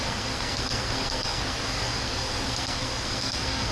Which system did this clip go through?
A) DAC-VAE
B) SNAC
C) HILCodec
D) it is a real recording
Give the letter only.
B